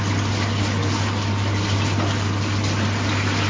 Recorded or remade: recorded